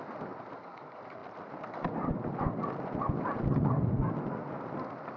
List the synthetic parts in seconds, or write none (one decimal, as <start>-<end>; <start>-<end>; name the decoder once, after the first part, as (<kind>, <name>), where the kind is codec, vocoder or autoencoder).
none